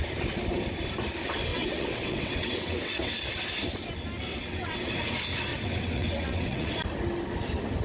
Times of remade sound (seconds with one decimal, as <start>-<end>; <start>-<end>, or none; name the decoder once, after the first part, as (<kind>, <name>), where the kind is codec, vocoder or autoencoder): 1.5-3.2 (vocoder, WaveNeXt); 4.3-4.9; 5.5-6.7